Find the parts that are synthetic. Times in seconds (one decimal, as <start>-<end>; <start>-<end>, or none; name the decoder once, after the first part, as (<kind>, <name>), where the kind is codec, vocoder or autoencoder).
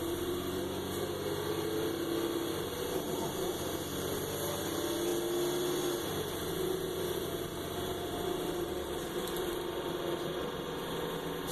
none